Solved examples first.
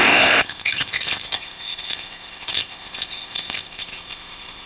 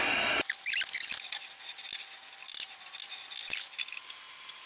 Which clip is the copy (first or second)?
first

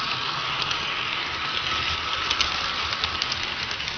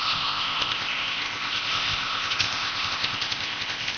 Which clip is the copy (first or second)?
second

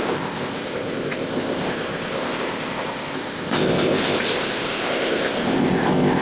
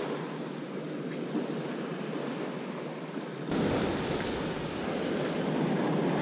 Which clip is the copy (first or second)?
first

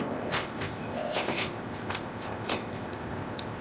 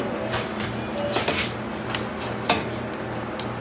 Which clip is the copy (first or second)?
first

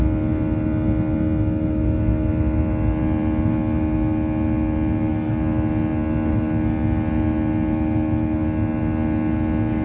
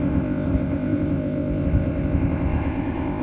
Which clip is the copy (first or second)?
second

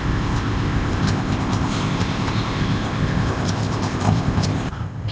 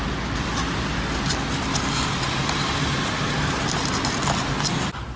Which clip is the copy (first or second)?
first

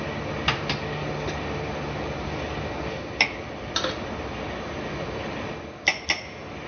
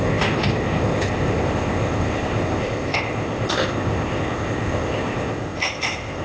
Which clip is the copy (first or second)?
second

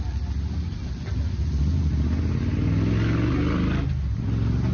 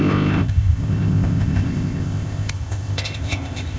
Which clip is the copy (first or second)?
second